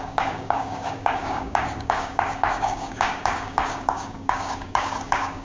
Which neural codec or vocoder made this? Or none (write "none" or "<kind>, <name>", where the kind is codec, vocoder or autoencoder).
codec, DAC